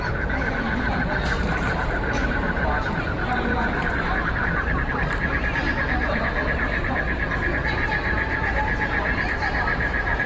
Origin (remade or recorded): remade